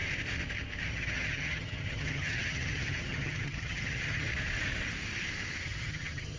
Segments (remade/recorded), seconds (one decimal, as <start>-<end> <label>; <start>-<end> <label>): 0.0-0.8 recorded; 0.8-4.3 remade; 4.3-5.6 recorded; 5.6-6.4 remade